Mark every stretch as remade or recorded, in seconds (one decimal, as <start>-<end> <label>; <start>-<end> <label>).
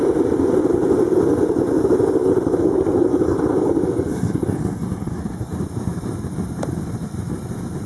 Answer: 0.0-7.9 recorded